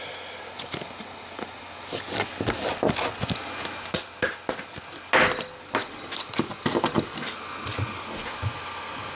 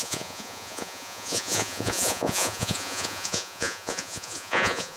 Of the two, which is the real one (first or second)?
first